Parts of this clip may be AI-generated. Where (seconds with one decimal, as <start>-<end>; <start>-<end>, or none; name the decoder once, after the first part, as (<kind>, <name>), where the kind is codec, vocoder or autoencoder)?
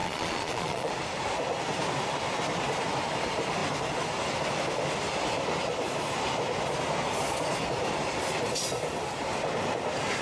0.0-0.9 (vocoder, Vocos)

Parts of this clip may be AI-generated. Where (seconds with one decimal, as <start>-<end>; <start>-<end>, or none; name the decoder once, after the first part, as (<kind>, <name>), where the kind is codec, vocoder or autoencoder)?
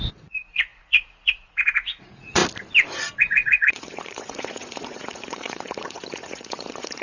0.0-2.4 (vocoder, Vocos); 3.2-7.0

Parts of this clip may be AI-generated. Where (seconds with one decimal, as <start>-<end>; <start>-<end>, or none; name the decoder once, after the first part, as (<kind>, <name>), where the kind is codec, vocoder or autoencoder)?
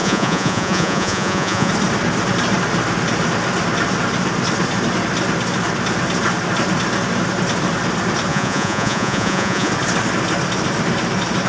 0.0-1.7 (vocoder, Vocos); 8.3-9.7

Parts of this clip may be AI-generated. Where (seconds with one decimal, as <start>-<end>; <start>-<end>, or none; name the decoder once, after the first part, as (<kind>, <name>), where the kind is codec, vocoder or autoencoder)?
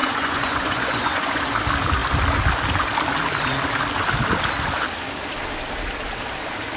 0.0-1.4 (vocoder, Vocos)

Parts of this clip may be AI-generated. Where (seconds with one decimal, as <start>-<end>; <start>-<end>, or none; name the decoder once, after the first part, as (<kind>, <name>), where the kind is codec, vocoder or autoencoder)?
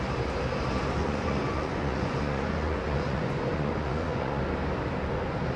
1.0-4.4 (vocoder, Vocos)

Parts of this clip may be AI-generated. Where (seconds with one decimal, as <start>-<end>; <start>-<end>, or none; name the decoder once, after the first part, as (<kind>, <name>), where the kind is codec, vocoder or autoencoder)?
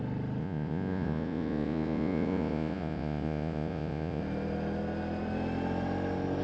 0.4-4.2 (vocoder, Vocos)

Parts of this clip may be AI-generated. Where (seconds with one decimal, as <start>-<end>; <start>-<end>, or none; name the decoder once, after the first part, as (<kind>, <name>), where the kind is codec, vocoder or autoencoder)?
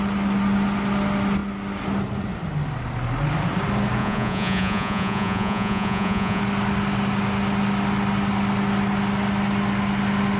4.0-6.4 (vocoder, Vocos)